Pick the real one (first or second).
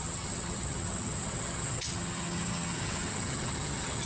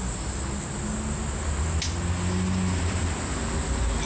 second